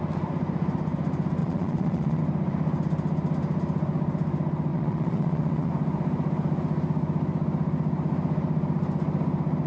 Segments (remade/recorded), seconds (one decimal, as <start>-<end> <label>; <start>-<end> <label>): 0.0-1.4 recorded; 1.4-2.2 remade; 2.2-4.7 recorded; 4.7-5.7 remade; 5.7-9.7 recorded